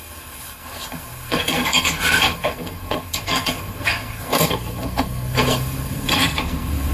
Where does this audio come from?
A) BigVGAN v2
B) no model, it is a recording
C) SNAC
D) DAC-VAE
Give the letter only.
C